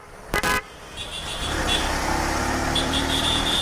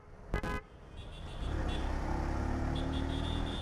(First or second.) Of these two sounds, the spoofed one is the first